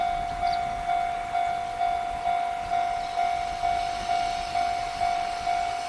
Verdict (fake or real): real